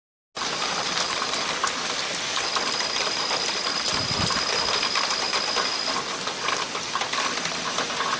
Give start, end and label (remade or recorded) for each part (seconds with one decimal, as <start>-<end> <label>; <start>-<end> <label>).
0.0-0.4 recorded; 0.4-4.8 remade; 4.8-8.2 recorded